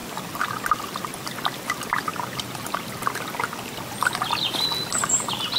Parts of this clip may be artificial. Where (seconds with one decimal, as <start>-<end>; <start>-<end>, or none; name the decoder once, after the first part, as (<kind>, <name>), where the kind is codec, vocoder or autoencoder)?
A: none